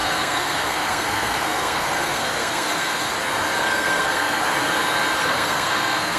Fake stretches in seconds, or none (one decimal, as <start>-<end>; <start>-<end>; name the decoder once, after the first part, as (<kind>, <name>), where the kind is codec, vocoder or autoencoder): 0.0-3.1 (codec, SNAC); 3.6-4.4; 5.2-6.2